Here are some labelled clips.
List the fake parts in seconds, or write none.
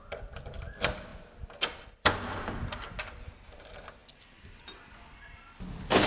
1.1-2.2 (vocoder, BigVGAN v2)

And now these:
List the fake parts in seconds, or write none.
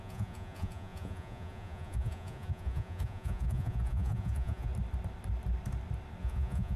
0.0-4.7 (vocoder, Vocos); 6.2-6.8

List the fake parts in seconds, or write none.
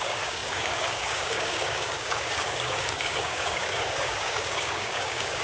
0.0-5.4 (codec, DAC)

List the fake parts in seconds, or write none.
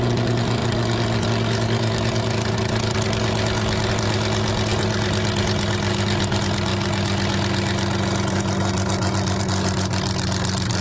none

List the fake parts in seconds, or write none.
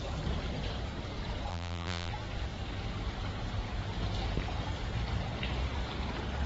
1.5-2.1 (vocoder, BigVGAN v2)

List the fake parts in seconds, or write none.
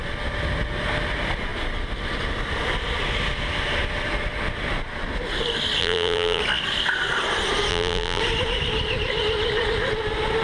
5.8-6.4 (vocoder, BigVGAN v2); 7.7-8.2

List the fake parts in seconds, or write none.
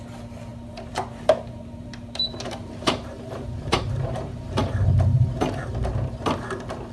0.5-4.6 (vocoder, BigVGAN v2)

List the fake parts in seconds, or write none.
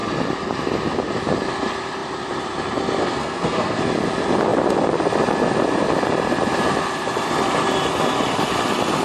3.0-3.8 (codec, SNAC)